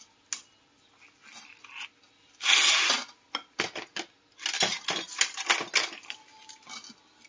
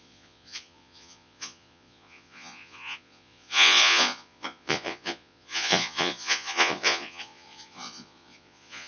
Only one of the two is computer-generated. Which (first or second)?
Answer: second